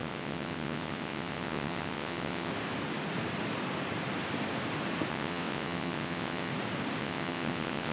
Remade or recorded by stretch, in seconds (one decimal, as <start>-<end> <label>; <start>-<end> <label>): 0.0-2.5 remade; 2.5-5.1 recorded; 5.1-6.5 remade; 6.5-7.0 recorded; 7.0-7.9 remade